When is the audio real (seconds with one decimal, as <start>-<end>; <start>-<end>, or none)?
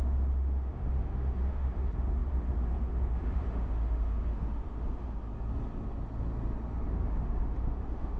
5.3-6.9